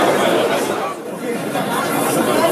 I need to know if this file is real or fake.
fake